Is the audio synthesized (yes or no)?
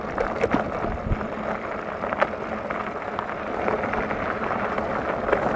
no